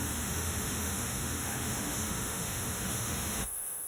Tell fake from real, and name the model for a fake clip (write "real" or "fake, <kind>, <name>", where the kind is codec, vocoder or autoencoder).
fake, autoencoder, DAC-VAE